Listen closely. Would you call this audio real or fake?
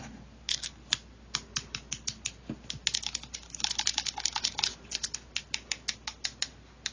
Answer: real